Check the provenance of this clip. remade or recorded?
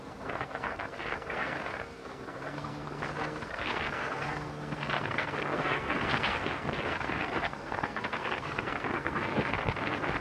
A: remade